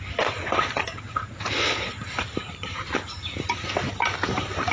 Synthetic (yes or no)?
no